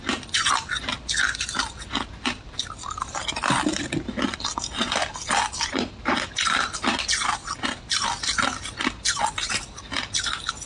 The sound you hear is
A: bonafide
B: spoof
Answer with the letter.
A